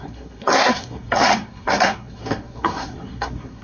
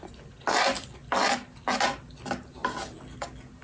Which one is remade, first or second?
first